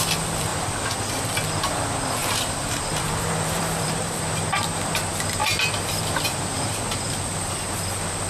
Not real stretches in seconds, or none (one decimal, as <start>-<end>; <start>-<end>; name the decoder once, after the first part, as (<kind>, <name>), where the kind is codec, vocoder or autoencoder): 0.5-1.1 (vocoder, BigVGAN v2); 2.2-4.2; 5.4-6.8